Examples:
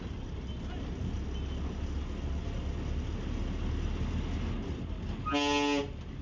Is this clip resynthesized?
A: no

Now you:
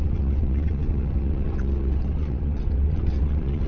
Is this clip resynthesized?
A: yes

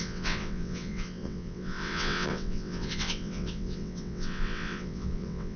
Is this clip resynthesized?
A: yes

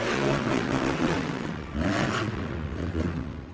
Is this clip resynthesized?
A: yes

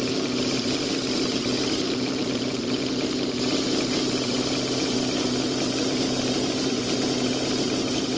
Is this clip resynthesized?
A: no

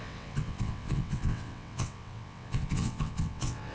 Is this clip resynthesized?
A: yes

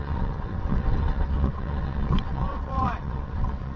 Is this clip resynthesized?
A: yes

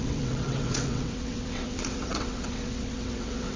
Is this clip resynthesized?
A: yes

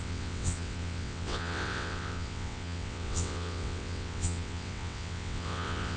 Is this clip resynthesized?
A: yes